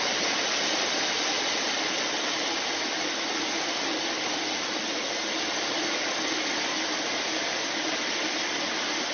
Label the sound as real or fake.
real